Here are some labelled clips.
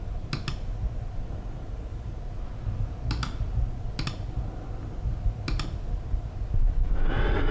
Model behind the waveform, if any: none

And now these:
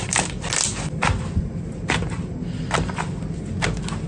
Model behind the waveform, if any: none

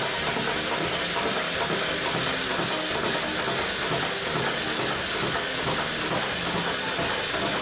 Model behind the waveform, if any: none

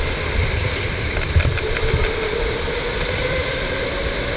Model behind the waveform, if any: vocoder, BigVGAN v2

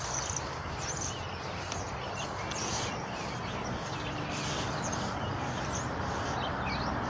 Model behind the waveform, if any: none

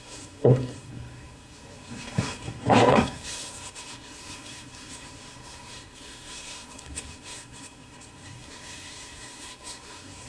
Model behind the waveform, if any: codec, SNAC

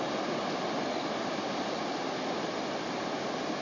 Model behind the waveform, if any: none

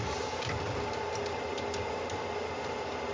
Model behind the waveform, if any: none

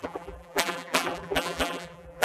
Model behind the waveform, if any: vocoder, BigVGAN v2